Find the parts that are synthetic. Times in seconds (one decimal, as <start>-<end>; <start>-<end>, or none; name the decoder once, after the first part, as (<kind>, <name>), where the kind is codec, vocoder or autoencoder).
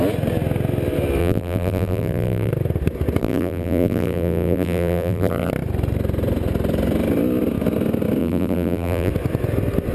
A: 1.2-2.5 (vocoder, BigVGAN v2); 3.2-5.5; 8.2-9.1